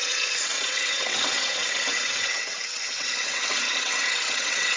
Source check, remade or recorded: remade